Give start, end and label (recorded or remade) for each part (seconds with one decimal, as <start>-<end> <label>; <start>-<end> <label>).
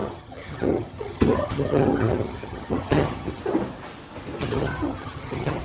0.0-3.4 remade; 3.4-4.4 recorded; 4.4-5.6 remade